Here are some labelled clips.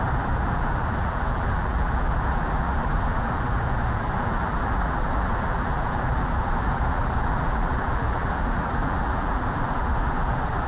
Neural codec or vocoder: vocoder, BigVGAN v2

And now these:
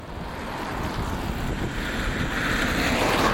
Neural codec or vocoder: none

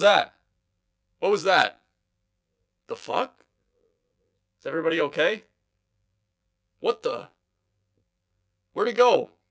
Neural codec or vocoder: vocoder, BigVGAN v2